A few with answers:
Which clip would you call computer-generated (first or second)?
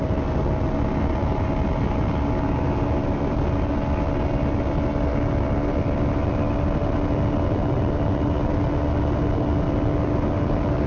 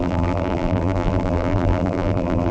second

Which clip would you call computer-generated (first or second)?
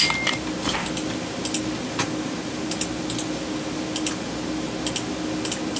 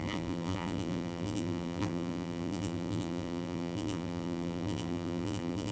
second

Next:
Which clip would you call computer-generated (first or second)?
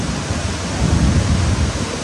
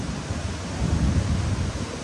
second